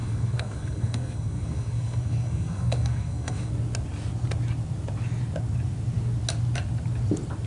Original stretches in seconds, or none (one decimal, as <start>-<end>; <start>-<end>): 3.5-7.5